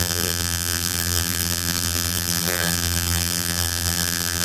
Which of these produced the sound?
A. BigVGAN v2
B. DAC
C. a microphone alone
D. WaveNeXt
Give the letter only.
A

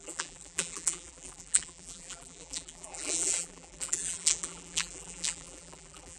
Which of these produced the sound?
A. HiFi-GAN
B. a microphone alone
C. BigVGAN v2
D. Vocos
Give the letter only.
C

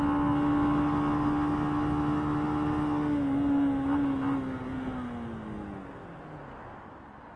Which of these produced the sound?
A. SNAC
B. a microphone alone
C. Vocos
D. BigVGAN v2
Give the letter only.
B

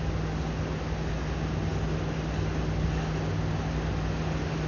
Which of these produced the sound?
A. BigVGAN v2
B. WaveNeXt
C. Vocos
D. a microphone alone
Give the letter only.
D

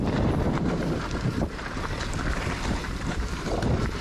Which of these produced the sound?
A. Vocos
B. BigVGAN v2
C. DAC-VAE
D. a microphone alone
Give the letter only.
B